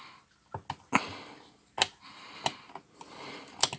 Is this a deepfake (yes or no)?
no